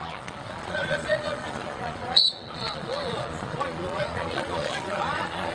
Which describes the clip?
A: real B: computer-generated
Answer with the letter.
B